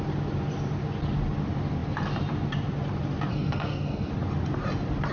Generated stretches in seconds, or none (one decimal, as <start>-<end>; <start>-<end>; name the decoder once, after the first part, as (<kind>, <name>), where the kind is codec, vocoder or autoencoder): 3.3-4.1 (codec, SNAC)